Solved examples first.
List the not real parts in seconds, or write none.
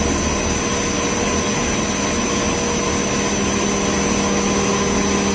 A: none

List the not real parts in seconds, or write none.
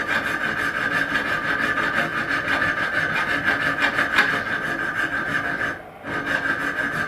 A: none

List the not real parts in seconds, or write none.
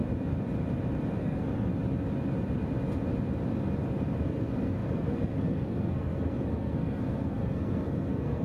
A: 1.2-1.7 (codec, SNAC); 4.2-8.4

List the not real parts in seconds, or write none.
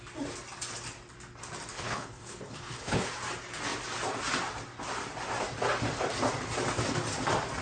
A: 1.7-3.1 (codec, HILCodec)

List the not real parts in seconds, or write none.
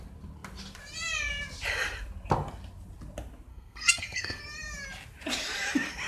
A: 3.5-4.4 (codec, SNAC)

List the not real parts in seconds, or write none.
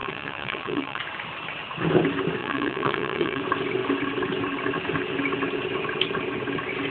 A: 0.0-1.0 (vocoder, WaveNeXt); 2.4-3.4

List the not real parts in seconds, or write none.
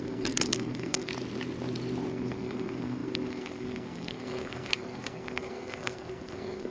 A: 0.0-1.1 (codec, SNAC); 2.1-6.7